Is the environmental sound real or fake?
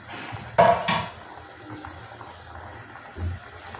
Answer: real